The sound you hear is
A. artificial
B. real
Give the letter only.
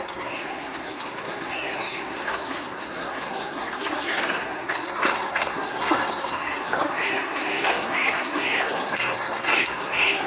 A